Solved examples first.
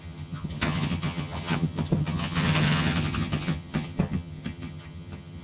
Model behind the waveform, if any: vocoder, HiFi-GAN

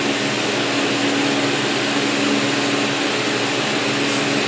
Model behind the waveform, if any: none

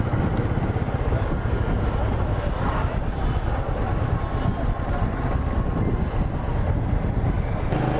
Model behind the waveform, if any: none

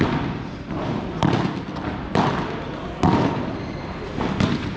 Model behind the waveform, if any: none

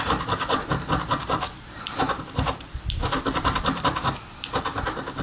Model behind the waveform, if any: none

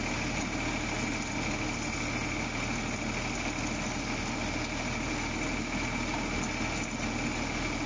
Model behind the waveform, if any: none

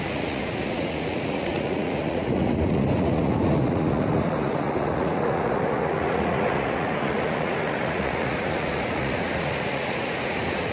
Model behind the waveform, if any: vocoder, Vocos